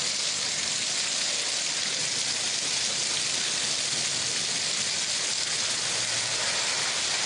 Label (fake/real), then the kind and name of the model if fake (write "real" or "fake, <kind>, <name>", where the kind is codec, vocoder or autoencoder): real